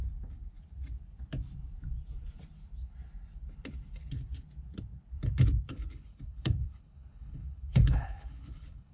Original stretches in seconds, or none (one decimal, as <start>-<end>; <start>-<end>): 0.0-5.7